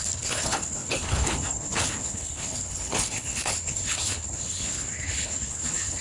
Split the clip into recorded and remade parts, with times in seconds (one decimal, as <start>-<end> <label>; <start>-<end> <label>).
0.0-6.0 remade